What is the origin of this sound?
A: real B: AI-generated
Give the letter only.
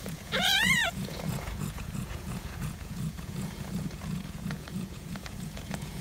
B